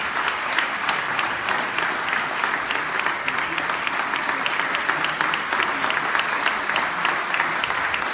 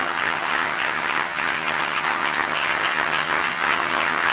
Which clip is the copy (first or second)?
second